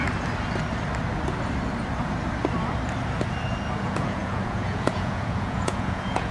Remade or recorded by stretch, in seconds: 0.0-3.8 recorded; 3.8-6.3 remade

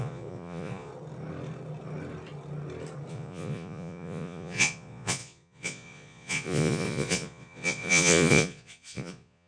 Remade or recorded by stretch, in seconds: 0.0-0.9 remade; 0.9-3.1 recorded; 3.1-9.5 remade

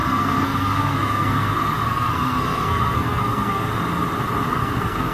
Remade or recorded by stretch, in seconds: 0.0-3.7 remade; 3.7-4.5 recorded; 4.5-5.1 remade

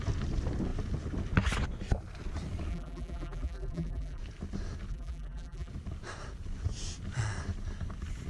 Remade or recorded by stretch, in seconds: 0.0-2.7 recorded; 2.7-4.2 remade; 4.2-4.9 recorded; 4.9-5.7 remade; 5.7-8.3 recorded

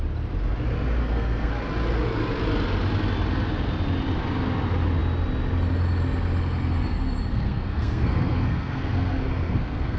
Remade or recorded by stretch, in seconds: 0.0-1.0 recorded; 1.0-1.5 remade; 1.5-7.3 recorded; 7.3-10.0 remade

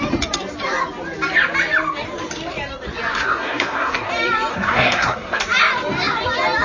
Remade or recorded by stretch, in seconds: 0.0-3.1 recorded; 3.1-4.1 remade; 4.1-4.5 recorded; 4.5-5.4 remade; 5.4-6.6 recorded